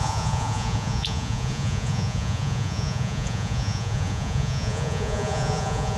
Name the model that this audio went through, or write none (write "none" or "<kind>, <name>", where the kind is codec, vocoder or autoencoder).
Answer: vocoder, Vocos